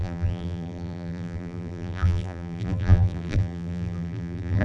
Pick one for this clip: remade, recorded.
remade